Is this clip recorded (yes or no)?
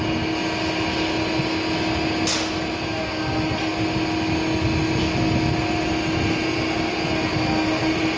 yes